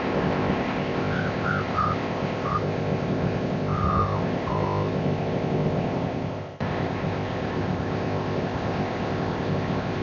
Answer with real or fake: fake